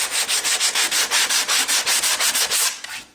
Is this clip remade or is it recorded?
recorded